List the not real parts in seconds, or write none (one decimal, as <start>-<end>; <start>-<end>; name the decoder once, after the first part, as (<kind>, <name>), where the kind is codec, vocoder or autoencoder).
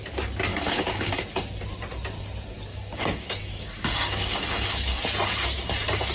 0.5-1.2 (codec, DAC); 2.7-5.0